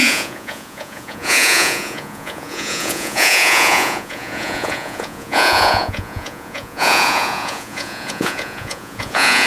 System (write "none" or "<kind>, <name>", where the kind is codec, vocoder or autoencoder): vocoder, Vocos